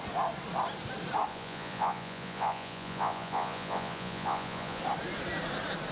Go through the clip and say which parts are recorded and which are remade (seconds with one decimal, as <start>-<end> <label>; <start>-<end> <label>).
0.0-1.3 recorded; 1.3-4.8 remade; 4.8-5.9 recorded